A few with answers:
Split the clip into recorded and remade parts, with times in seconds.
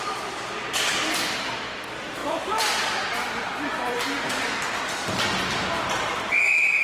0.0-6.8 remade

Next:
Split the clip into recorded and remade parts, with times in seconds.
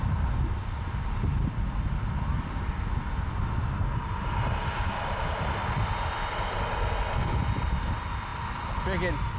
0.0-9.4 recorded